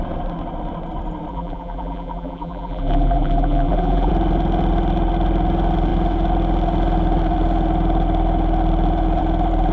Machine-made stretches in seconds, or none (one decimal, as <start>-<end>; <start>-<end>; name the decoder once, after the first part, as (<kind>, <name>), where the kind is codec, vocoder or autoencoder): 1.3-4.1 (vocoder, BigVGAN v2)